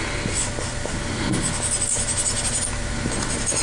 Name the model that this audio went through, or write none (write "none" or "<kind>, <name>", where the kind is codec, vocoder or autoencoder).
none